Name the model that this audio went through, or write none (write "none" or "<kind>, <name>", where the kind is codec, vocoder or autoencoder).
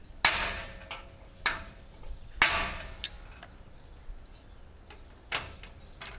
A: none